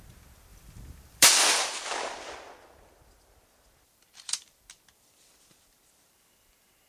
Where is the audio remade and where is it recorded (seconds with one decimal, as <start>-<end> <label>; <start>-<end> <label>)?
0.0-0.5 recorded; 0.5-4.6 remade; 4.6-6.9 recorded